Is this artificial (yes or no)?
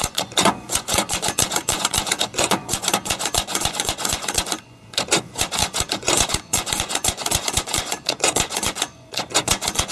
yes